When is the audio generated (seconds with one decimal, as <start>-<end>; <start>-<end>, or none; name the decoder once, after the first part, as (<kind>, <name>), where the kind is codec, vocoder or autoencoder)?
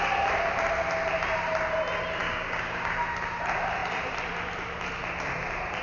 2.2-2.9 (codec, DAC)